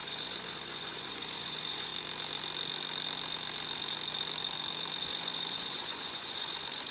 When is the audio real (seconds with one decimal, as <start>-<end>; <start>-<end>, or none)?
1.9-5.0

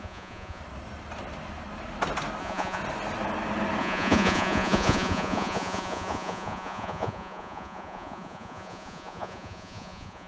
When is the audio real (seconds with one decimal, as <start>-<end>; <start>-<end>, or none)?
0.6-2.4; 2.8-3.8

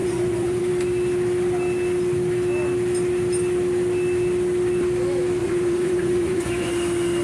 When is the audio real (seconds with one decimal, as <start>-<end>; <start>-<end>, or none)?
0.7-5.4; 6.7-7.2

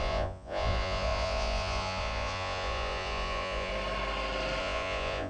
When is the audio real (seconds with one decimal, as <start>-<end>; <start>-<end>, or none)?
3.7-4.6

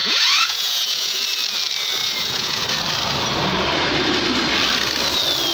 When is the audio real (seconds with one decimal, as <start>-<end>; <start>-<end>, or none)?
1.2-2.0; 2.6-5.5